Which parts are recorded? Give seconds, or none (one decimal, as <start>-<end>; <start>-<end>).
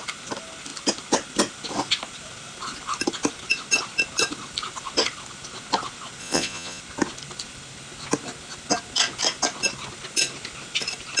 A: 0.0-6.2; 6.8-11.2